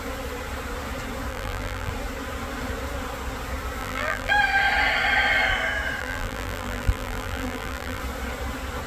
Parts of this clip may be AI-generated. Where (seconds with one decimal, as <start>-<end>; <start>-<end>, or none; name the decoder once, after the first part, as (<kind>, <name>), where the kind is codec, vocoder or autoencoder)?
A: 1.3-1.9 (vocoder, BigVGAN v2); 3.8-4.3; 6.0-8.0